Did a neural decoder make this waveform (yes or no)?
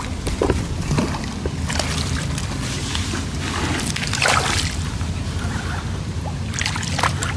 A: yes